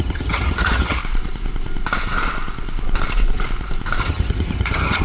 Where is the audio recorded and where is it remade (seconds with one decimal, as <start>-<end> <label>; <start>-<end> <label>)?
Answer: 0.0-1.0 remade; 1.0-4.0 recorded; 4.0-5.0 remade